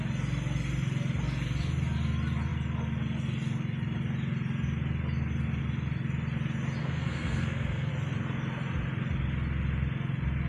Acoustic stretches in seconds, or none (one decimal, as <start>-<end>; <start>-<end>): 0.0-6.8; 7.9-10.5